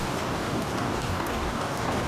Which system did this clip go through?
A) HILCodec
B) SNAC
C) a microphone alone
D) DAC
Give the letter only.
D